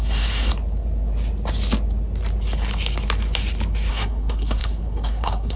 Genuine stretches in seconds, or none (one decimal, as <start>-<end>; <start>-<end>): 0.5-3.9